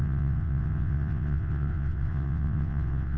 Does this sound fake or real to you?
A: fake